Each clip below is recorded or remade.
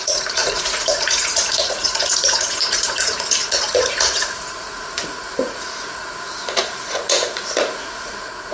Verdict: remade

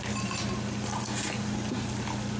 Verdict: recorded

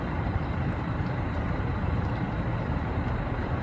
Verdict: remade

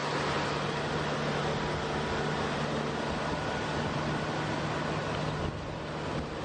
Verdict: recorded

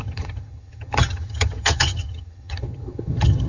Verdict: remade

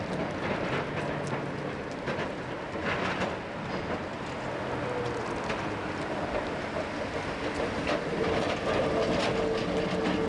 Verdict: recorded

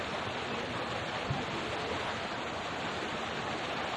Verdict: recorded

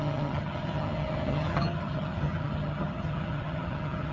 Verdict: remade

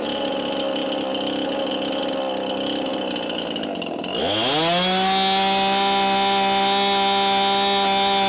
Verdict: recorded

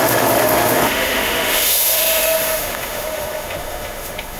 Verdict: remade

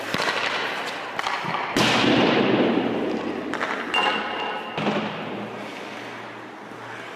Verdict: recorded